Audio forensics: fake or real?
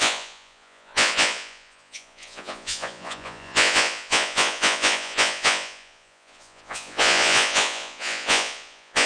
fake